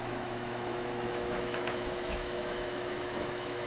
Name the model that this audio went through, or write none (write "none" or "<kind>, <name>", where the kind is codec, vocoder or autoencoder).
autoencoder, DAC-VAE